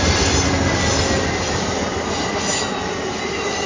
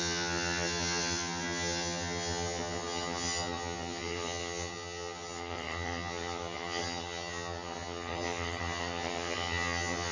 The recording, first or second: first